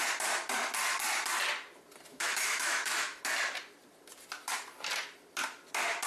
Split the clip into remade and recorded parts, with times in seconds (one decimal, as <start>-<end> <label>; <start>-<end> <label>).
0.0-2.1 recorded; 2.1-3.2 remade; 3.2-6.1 recorded